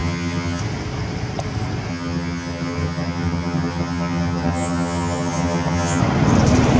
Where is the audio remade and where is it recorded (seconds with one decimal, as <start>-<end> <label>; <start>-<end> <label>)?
0.0-0.6 remade; 0.6-1.9 recorded; 1.9-6.0 remade; 6.0-6.8 recorded